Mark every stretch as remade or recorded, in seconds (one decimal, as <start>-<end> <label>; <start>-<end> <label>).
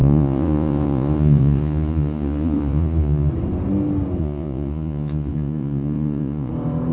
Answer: 0.0-3.3 remade; 3.3-4.2 recorded; 4.2-6.5 remade; 6.5-6.9 recorded